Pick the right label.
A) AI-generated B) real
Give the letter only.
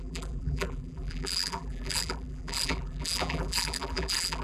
A